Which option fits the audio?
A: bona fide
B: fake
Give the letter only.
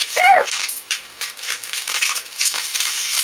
B